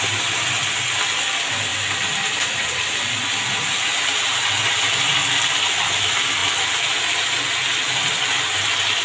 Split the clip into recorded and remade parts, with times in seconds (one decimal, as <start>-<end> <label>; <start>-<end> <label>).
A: 0.0-1.7 recorded; 1.7-3.2 remade; 3.2-9.0 recorded